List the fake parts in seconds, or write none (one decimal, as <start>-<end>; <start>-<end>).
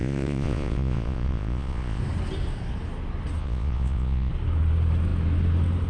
0.0-2.0; 3.4-4.3